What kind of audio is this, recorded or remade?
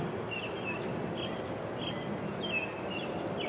recorded